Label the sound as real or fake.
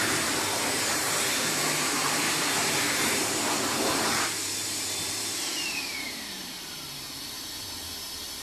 fake